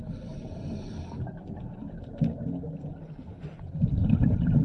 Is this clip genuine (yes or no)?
yes